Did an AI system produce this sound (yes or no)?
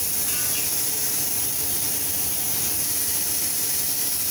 no